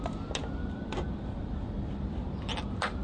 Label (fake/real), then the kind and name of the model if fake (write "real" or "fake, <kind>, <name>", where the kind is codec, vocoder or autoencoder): real